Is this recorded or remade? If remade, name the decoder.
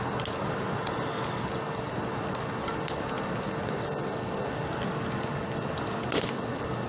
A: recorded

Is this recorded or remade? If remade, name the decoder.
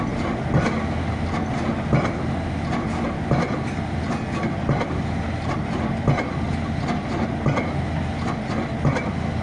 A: recorded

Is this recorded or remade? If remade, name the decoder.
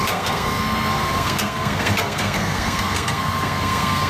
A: remade, codec, SNAC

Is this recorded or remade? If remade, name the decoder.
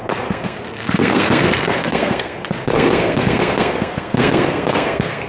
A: remade, codec, SNAC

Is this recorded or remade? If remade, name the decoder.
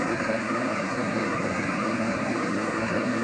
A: remade, codec, SNAC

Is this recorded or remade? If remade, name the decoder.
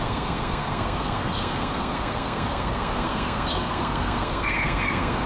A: remade, codec, SNAC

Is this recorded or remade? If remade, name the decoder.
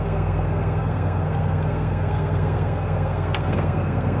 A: remade, codec, SNAC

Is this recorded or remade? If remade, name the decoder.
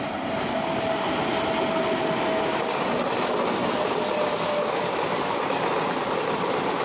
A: recorded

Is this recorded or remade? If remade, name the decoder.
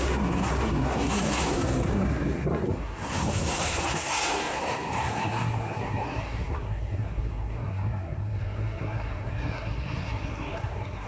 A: remade, codec, SNAC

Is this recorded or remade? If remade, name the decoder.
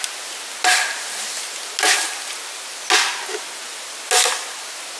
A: recorded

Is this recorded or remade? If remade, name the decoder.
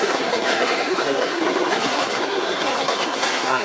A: remade, codec, SNAC